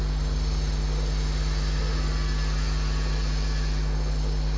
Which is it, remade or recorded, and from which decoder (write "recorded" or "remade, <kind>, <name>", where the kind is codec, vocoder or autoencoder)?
recorded